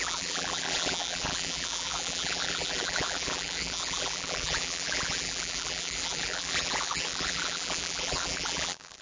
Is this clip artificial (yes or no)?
yes